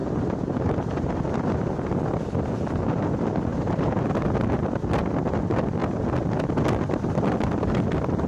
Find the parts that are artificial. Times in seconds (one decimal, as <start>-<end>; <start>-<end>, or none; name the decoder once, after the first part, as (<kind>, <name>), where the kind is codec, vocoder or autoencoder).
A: 0.0-1.7 (vocoder, BigVGAN v2); 3.5-4.1